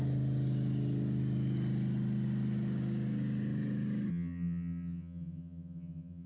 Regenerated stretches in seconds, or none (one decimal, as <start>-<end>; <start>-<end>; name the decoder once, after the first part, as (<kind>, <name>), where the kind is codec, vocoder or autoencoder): 4.1-6.3 (vocoder, HiFi-GAN)